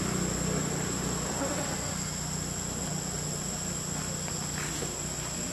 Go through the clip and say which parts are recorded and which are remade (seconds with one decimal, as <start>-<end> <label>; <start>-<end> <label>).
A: 0.0-5.5 recorded